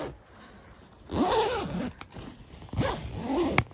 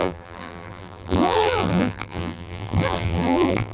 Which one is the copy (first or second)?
second